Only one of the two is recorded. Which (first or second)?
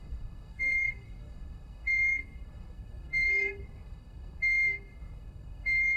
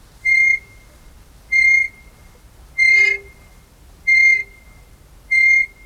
second